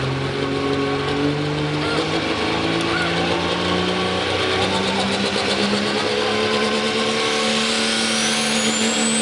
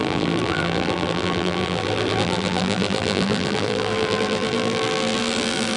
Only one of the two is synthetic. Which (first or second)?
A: second